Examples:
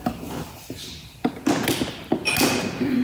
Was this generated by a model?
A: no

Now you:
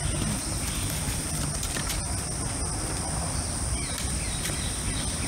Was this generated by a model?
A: no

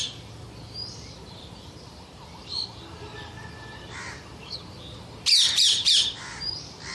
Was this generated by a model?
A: yes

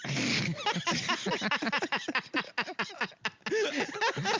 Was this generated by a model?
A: no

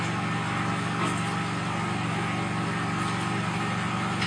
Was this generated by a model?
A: no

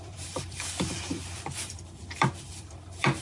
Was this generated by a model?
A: yes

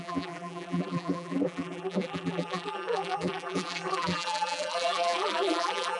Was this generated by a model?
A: yes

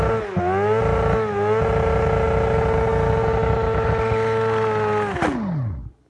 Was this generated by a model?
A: no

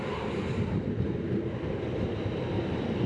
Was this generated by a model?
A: yes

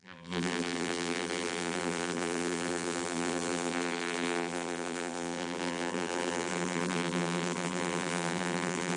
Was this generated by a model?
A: yes